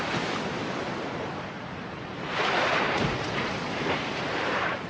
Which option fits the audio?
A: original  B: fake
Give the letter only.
B